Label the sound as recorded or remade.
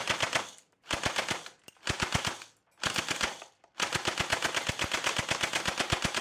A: recorded